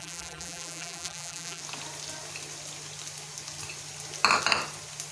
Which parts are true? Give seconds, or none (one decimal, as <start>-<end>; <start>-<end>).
1.6-5.1